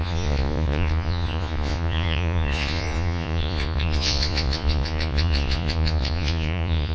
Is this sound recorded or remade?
remade